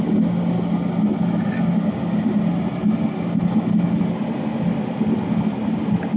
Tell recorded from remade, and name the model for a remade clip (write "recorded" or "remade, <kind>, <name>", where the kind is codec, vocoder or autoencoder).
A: recorded